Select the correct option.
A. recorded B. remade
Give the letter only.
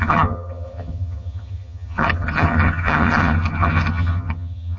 B